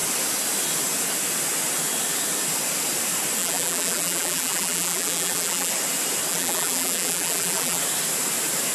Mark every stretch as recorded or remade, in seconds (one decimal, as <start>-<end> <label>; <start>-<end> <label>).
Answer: 0.0-3.4 recorded; 3.4-5.7 remade; 5.7-6.3 recorded; 6.3-7.8 remade; 7.8-8.7 recorded